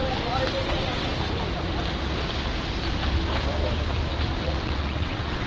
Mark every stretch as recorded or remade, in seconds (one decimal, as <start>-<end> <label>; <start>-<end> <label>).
0.0-0.6 recorded; 0.6-1.1 remade; 1.1-4.4 recorded; 4.4-5.5 remade